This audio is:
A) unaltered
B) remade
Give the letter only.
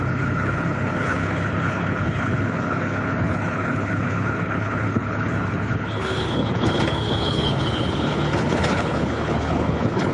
B